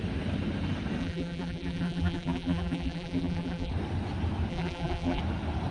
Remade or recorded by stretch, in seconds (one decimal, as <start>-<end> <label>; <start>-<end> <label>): 0.0-1.0 recorded; 1.0-3.7 remade; 3.7-4.5 recorded; 4.5-5.2 remade; 5.2-5.7 recorded